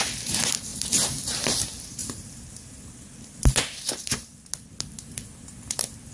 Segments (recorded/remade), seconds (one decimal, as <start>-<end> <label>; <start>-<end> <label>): 0.0-6.1 recorded